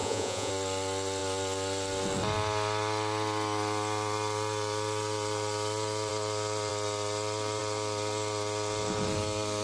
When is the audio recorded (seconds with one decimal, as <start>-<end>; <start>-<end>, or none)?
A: 0.5-9.6